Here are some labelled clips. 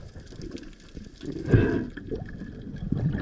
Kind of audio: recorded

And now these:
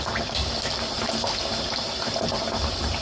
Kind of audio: recorded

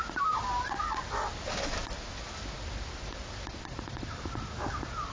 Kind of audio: recorded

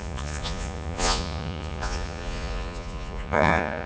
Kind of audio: remade